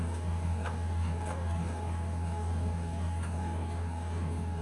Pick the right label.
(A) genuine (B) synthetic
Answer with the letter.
B